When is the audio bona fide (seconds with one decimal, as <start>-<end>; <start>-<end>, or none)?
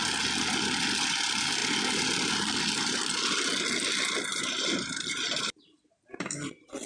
0.0-4.3; 6.2-6.9